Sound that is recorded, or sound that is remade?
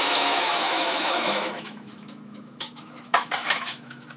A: remade